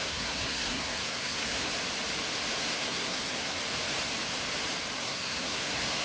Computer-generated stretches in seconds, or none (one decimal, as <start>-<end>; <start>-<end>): 0.0-1.7; 2.6-3.6; 5.0-6.0